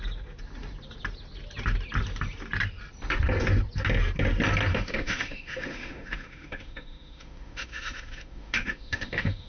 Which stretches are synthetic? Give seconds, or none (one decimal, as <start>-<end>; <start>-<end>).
4.7-9.5